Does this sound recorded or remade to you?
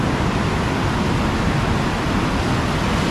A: recorded